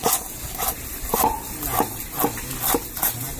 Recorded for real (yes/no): yes